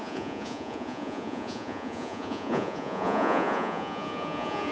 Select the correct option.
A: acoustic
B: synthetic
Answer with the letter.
B